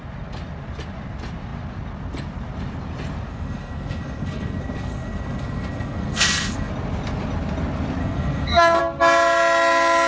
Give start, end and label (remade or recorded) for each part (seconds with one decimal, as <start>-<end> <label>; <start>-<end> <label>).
0.0-3.3 recorded; 3.3-6.7 remade; 6.7-8.0 recorded; 8.0-8.8 remade; 8.8-10.1 recorded